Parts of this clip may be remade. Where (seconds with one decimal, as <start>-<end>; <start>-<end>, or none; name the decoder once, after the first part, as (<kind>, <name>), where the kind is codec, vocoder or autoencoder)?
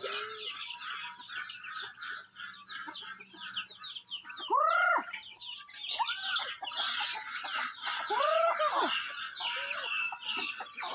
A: none